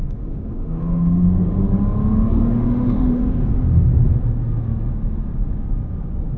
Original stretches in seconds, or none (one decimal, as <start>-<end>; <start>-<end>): 1.6-2.3; 3.5-6.4